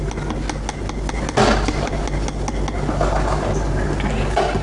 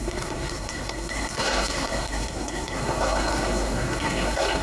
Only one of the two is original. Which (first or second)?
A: first